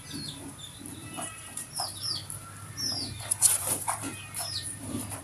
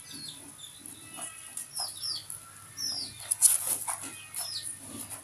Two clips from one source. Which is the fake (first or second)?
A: first